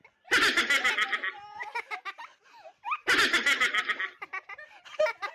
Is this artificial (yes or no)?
no